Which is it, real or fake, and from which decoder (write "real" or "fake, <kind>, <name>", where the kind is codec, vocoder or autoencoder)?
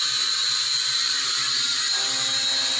real